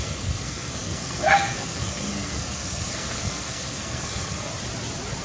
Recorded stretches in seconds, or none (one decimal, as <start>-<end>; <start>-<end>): 4.5-5.2